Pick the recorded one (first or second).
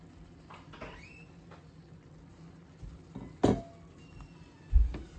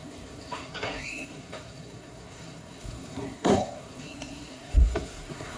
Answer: first